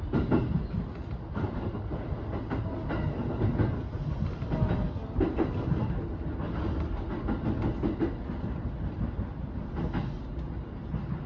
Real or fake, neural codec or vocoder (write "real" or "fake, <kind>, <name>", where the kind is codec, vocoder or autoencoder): real